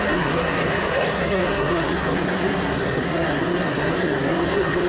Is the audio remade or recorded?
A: remade